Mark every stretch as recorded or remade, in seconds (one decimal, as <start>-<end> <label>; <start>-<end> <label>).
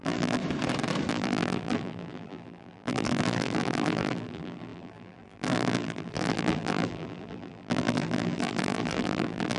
0.0-0.4 remade; 0.4-1.1 recorded; 1.1-9.6 remade